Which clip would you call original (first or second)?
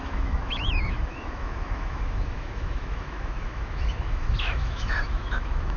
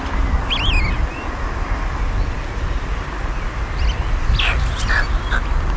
second